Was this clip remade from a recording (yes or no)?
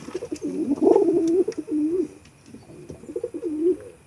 no